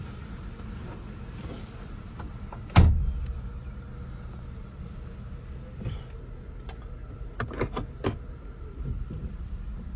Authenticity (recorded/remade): recorded